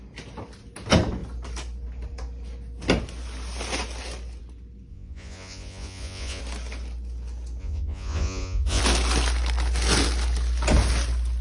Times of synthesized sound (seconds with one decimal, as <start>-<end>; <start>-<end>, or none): 4.9-6.4; 7.6-8.8